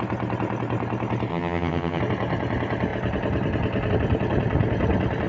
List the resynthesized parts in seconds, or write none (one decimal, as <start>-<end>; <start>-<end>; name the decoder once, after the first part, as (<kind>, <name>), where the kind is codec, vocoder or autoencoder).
1.3-2.0 (vocoder, HiFi-GAN)